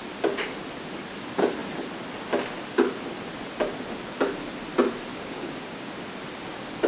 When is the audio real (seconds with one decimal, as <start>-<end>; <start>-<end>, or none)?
0.0-5.1; 5.9-6.9